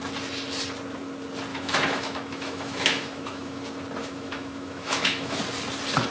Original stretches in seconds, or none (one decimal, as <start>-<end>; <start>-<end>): 0.0-1.5; 3.6-4.0; 5.4-6.1